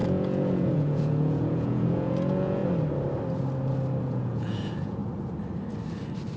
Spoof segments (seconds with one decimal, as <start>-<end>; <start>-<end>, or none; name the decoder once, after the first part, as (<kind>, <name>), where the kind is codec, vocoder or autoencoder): 0.0-2.6 (vocoder, Vocos); 4.0-5.0